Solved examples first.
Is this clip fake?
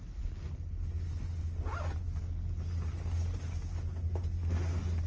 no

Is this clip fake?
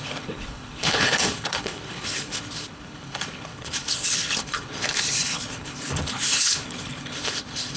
yes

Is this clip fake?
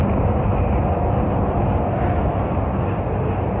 no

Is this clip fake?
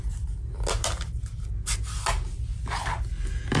no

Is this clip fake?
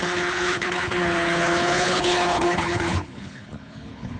yes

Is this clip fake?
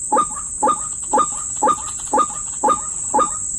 no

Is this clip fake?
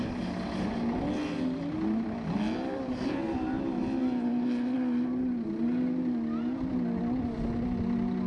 no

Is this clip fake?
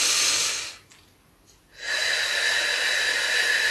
no